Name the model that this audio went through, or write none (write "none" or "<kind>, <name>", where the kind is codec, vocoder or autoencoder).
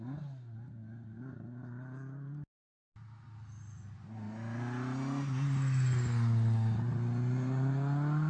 none